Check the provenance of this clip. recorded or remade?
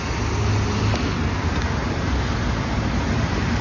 recorded